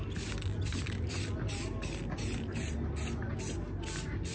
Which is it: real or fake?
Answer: real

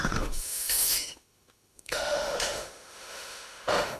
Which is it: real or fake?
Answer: fake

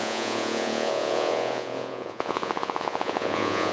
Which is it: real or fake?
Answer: fake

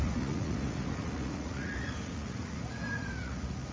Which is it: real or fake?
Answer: fake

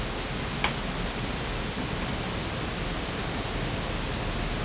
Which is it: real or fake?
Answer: real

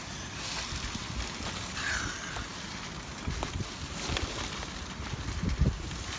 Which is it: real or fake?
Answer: real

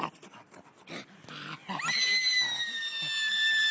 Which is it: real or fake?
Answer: real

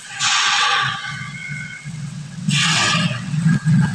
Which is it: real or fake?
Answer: fake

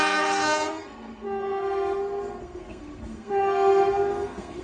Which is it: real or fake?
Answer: fake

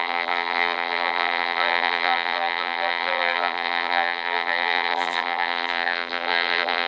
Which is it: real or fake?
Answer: fake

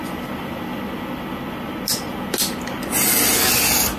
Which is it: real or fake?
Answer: real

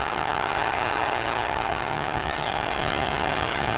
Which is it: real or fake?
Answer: fake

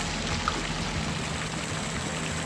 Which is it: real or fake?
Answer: real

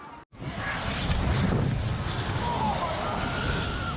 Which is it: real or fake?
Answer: real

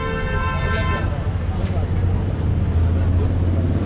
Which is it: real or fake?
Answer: real